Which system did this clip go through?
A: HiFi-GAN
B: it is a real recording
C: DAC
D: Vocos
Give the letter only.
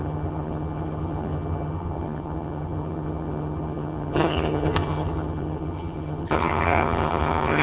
A